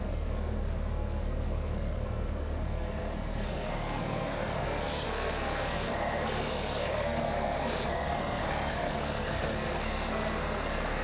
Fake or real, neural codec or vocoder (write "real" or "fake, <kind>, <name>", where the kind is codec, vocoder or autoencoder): fake, codec, SNAC